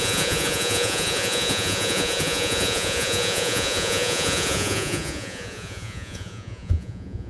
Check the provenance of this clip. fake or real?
fake